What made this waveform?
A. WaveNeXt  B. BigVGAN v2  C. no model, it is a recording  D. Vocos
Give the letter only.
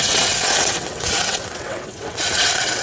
A